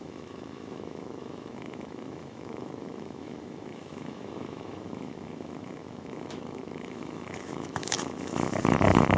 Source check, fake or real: fake